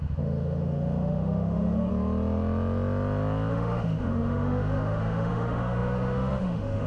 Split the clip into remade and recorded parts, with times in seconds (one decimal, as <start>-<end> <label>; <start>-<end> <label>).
0.0-1.9 remade; 1.9-3.5 recorded; 3.5-6.9 remade